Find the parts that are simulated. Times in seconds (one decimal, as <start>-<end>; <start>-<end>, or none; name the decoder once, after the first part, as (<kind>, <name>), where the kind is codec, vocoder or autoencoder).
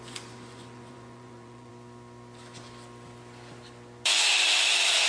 0.0-1.7 (vocoder, Vocos)